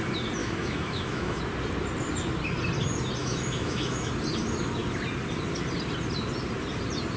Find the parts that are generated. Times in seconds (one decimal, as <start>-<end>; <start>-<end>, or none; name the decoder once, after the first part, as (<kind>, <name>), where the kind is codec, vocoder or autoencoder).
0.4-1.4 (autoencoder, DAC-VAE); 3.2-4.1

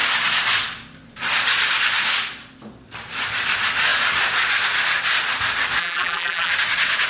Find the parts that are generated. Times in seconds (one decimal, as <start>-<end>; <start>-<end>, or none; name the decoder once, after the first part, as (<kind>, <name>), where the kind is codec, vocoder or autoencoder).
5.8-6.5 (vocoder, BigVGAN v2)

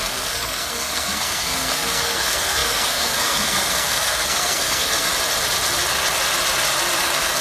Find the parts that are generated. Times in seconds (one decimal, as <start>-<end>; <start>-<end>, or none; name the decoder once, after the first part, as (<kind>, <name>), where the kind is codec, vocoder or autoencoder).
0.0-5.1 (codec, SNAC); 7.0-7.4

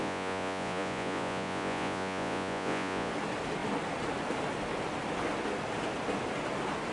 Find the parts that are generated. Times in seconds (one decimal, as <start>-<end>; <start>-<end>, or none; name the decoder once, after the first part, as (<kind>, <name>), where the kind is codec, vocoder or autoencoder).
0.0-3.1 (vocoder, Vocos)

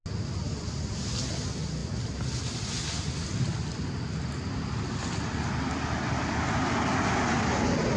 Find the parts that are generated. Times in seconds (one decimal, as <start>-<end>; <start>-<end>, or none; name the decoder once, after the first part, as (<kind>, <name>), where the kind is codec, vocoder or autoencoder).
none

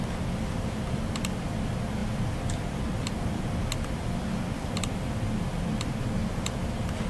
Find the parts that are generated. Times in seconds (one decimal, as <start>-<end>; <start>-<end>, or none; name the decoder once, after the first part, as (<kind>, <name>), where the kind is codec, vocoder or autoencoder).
2.0-5.6 (vocoder, BigVGAN v2); 6.2-7.1